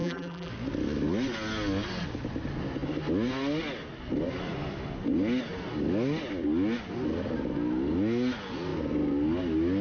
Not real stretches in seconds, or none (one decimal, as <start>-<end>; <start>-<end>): 0.0-0.5